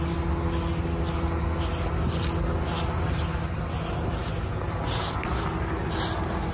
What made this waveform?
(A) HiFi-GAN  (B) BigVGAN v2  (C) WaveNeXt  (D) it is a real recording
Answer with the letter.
D